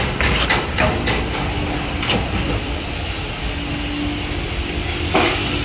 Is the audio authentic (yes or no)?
yes